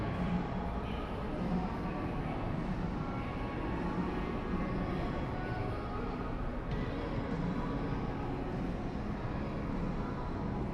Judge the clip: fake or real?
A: real